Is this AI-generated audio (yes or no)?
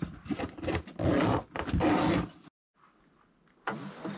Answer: no